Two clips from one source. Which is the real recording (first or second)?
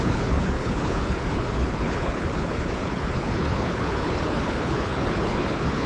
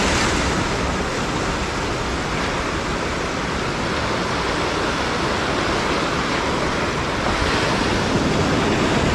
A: second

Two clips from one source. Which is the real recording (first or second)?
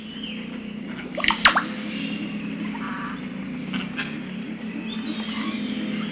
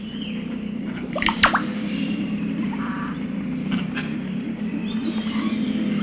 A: first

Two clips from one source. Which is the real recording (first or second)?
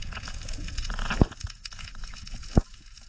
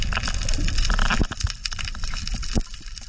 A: second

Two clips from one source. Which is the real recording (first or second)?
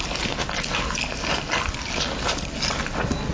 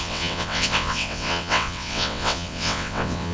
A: first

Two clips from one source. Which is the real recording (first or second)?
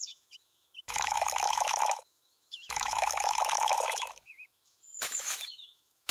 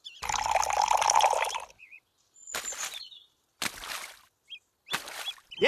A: second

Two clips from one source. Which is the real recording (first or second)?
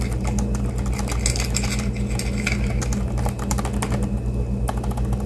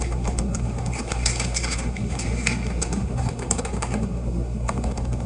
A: first